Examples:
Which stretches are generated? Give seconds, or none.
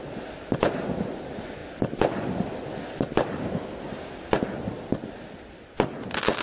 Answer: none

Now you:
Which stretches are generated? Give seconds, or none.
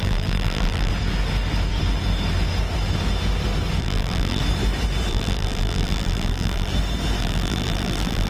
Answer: 0.0-0.9 (vocoder, BigVGAN v2); 3.8-4.4; 5.1-6.7; 7.2-8.3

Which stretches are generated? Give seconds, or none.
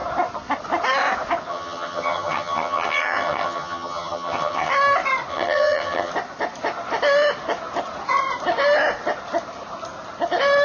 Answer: 1.5-4.7 (vocoder, HiFi-GAN); 5.3-6.1